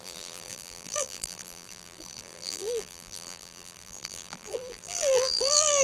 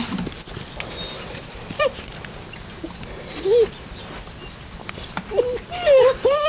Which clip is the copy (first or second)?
first